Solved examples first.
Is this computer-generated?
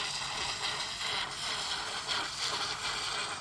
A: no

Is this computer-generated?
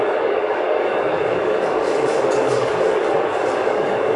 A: yes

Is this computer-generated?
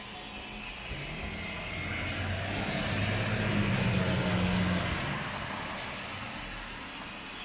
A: no